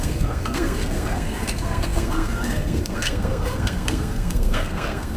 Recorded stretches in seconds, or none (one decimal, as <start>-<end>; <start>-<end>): none